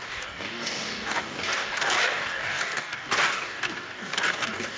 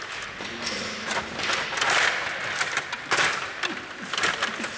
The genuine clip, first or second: second